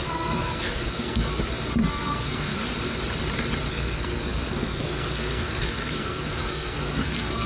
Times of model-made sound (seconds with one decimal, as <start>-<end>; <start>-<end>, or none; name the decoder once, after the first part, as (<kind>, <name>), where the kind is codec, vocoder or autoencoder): 0.0-1.3 (codec, SNAC); 1.9-2.6; 3.7-7.5

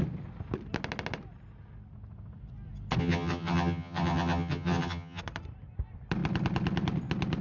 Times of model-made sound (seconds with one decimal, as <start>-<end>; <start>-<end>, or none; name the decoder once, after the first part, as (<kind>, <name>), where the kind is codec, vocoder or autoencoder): 3.0-5.2 (vocoder, HiFi-GAN)